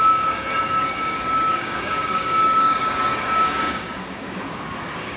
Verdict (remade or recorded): remade